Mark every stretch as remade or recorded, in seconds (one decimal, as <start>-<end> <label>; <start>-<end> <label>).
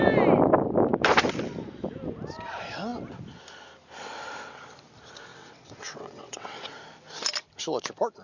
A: 0.0-5.3 recorded; 5.3-6.6 remade; 6.6-8.2 recorded